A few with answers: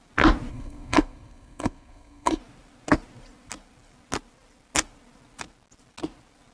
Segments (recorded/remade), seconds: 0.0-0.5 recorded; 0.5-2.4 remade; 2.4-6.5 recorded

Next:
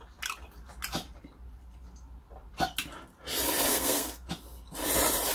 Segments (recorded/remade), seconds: 0.0-3.7 recorded; 3.7-4.3 remade; 4.3-5.3 recorded

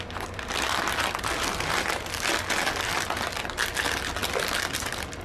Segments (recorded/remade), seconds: 0.0-5.2 recorded